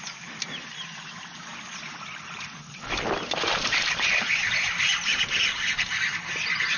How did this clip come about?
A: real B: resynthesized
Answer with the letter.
A